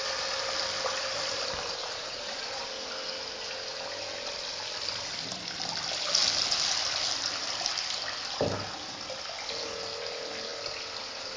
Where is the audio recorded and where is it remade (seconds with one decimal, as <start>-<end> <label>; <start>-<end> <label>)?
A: 0.0-1.8 recorded; 1.8-2.7 remade; 2.7-11.4 recorded